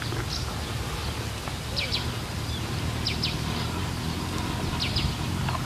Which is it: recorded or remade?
recorded